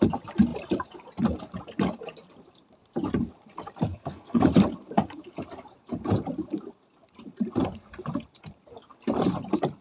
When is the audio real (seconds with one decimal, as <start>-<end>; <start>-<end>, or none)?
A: 0.0-3.9; 4.4-9.8